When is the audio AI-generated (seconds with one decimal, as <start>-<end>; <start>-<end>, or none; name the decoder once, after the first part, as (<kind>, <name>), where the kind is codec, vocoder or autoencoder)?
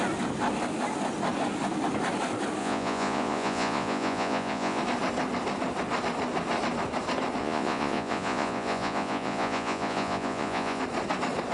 2.6-4.8 (vocoder, Vocos); 7.4-10.8